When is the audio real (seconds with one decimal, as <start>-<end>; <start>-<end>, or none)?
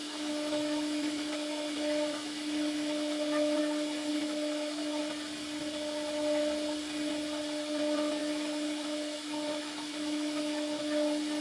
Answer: 3.6-4.1; 5.0-8.2; 10.8-11.4